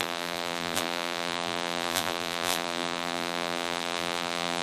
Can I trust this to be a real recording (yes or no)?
no